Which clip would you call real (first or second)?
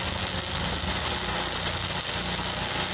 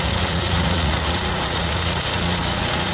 first